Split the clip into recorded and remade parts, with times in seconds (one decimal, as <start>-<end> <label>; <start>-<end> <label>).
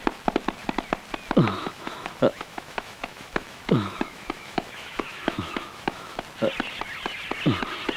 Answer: 0.0-1.6 recorded; 1.6-6.2 remade; 6.2-8.0 recorded